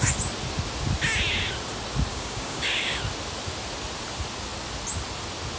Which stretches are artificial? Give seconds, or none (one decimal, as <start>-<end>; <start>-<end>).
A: 2.1-3.0